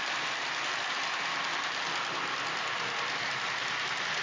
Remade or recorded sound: recorded